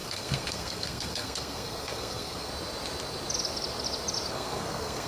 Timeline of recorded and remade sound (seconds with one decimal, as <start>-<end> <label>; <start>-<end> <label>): 0.0-2.5 remade; 2.5-4.3 recorded; 4.3-5.1 remade